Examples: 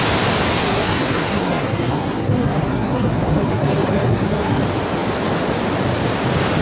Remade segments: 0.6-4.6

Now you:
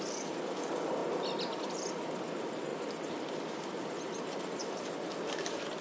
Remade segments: 0.0-1.0; 1.6-5.8

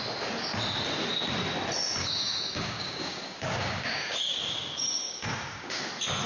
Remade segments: 2.0-5.8

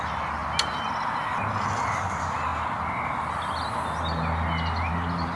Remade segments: none

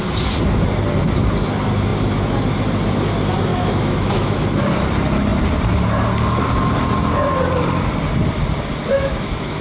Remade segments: 3.5-4.4; 8.9-9.6